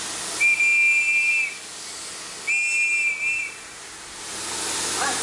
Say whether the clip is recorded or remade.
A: recorded